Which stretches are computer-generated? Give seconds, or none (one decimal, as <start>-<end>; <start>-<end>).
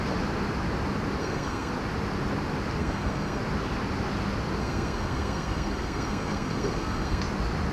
1.2-1.7; 2.8-3.4; 4.6-7.2